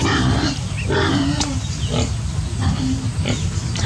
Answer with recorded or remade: recorded